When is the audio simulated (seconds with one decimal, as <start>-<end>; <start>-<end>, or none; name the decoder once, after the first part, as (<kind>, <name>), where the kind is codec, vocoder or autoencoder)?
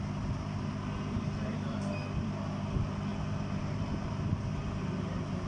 none